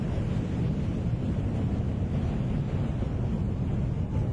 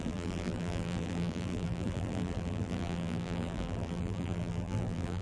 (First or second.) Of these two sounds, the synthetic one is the second